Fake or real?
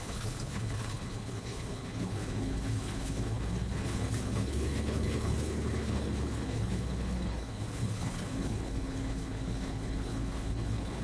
fake